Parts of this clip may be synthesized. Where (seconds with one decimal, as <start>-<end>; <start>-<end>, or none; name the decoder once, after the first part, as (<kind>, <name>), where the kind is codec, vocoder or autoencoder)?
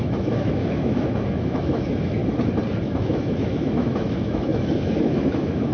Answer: 0.0-2.2 (autoencoder, DAC-VAE); 2.8-5.7